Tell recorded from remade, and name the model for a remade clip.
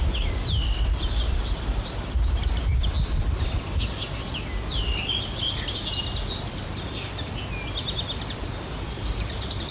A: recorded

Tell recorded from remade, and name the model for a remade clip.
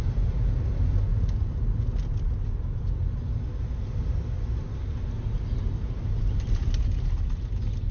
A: recorded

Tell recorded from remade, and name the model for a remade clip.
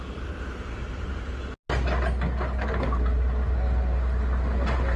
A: recorded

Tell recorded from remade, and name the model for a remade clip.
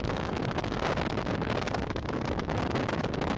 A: remade, codec, DAC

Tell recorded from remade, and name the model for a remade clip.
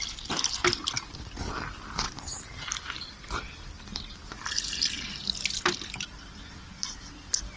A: recorded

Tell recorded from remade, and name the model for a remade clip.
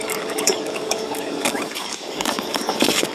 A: remade, codec, DAC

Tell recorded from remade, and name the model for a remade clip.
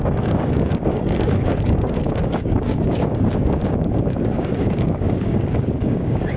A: remade, codec, DAC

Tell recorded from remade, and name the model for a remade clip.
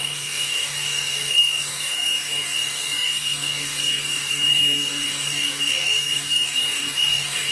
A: remade, codec, DAC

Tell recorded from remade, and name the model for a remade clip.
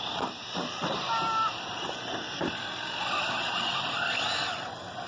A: recorded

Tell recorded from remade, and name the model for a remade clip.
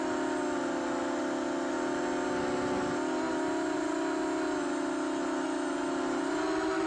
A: recorded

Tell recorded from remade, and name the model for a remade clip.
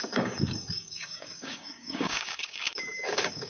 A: remade, codec, DAC